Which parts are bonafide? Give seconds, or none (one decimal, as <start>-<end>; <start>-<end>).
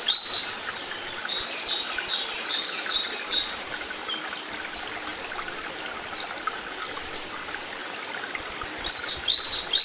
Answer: 0.0-1.2; 3.3-4.0; 4.5-7.8; 9.1-9.8